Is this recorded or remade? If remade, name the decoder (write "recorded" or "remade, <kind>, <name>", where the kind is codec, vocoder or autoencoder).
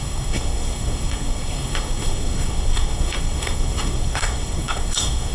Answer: remade, codec, SNAC